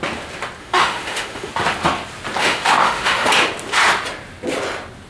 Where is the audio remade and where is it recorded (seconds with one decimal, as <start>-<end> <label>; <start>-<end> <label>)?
0.0-0.6 recorded; 0.6-1.5 remade; 1.5-2.4 recorded; 2.4-3.3 remade; 3.3-5.1 recorded